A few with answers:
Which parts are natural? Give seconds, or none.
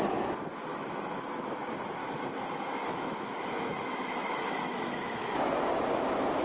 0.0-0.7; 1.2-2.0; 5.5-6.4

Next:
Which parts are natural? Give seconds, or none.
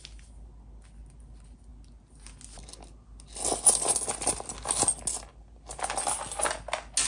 0.0-7.1